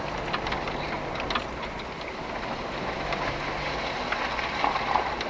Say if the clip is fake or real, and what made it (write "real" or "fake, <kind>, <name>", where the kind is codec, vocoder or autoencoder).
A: real